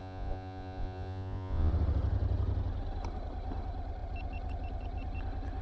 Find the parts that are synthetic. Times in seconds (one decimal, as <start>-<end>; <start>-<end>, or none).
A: 0.0-1.7